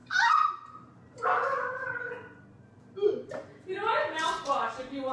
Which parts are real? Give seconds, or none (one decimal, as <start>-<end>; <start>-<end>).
0.0-5.1

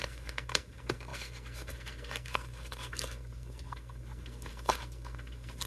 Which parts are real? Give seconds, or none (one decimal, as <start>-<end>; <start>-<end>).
none

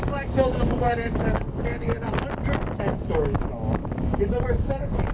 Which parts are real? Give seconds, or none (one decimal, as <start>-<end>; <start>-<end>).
1.9-2.8

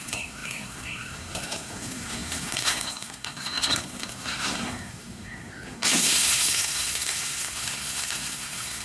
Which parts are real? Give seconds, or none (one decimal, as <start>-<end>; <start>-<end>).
none

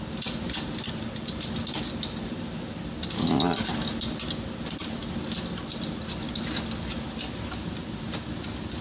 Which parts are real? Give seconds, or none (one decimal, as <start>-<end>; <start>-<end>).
0.0-8.8

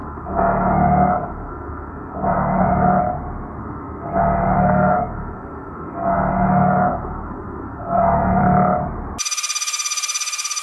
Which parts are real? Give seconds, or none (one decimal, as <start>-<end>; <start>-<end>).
3.0-3.6; 8.4-10.6

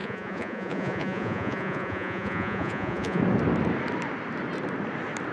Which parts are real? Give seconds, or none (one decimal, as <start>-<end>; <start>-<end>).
3.2-5.3